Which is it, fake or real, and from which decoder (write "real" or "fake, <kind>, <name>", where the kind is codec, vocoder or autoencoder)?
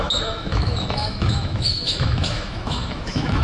fake, autoencoder, DAC-VAE